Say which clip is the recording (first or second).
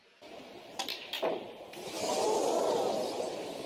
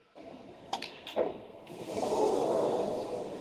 first